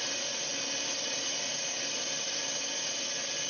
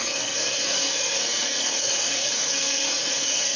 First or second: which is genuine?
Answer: first